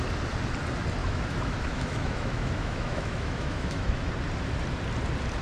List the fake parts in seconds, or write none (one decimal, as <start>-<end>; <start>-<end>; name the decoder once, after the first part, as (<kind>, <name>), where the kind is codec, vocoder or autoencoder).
1.0-4.1 (autoencoder, DAC-VAE)